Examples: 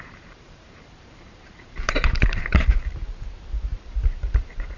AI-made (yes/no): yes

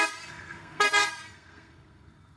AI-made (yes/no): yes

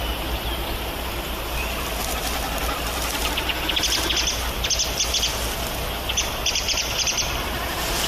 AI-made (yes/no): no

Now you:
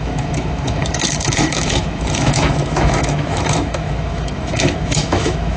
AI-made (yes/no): yes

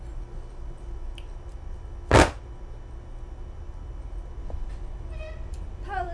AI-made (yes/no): no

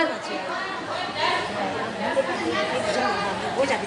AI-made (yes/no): no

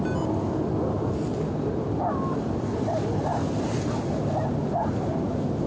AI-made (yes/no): no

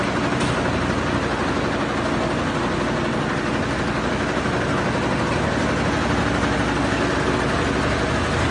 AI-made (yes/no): no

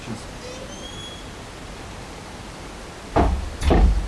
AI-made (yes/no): no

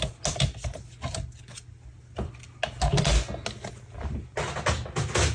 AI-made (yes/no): no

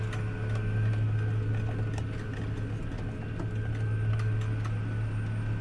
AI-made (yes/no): no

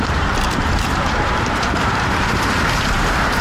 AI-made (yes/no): yes